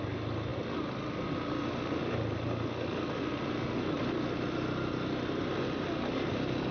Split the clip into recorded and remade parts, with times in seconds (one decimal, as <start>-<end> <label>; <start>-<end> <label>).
0.0-6.7 recorded